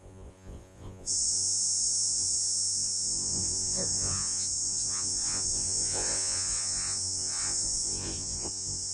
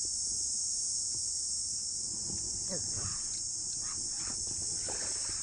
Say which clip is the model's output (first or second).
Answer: first